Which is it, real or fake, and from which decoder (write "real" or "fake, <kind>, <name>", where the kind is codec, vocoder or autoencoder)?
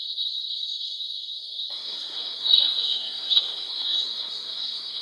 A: fake, codec, SNAC